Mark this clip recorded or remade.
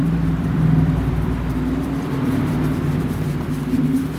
remade